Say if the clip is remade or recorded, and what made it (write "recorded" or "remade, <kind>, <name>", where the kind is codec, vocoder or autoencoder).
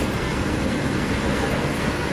remade, codec, SNAC